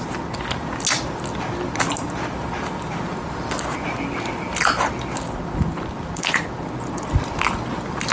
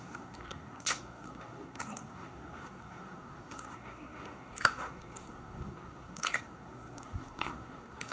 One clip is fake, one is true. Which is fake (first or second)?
second